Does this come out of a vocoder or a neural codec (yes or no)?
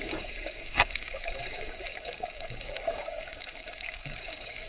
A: yes